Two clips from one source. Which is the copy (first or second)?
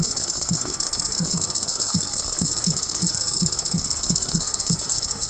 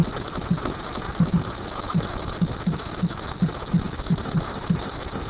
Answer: first